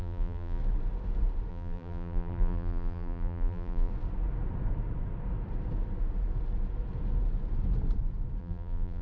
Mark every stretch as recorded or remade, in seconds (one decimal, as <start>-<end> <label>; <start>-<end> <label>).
0.0-0.6 remade; 0.6-1.5 recorded; 1.5-3.9 remade; 3.9-8.4 recorded; 8.4-9.0 remade